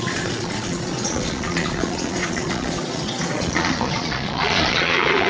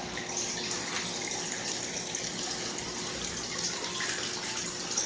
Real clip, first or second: second